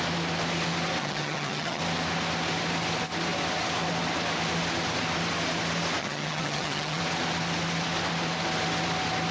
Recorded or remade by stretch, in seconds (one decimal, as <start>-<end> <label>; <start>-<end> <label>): 0.0-1.0 recorded; 1.0-1.8 remade; 1.8-6.0 recorded; 6.0-7.0 remade; 7.0-9.3 recorded

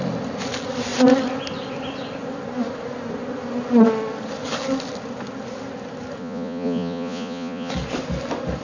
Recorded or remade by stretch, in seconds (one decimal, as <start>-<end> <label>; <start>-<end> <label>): 0.0-6.2 recorded; 6.2-7.7 remade; 7.7-8.6 recorded

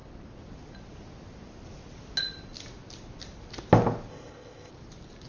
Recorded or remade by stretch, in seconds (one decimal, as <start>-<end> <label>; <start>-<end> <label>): 0.0-4.1 recorded; 4.1-4.7 remade; 4.7-5.3 recorded

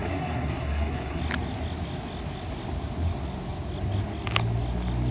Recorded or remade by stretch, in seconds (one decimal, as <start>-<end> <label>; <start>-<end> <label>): 0.0-1.2 remade; 1.2-5.1 recorded

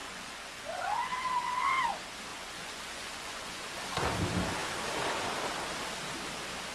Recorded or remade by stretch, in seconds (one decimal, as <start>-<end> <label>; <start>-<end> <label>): 0.0-1.5 remade; 1.5-2.3 recorded; 2.3-3.7 remade; 3.7-6.7 recorded

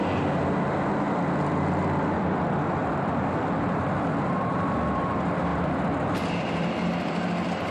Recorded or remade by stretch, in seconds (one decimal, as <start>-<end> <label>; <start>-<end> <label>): 0.0-2.0 recorded; 2.0-7.7 remade

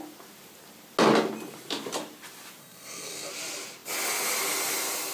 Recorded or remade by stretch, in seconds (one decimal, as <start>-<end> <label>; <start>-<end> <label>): 0.0-2.6 recorded; 2.6-3.3 remade; 3.3-5.1 recorded